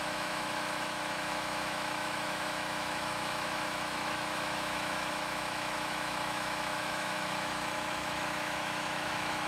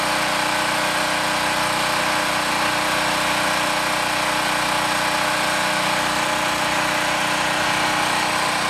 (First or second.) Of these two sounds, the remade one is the first